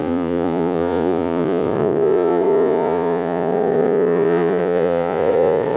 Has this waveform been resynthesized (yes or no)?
yes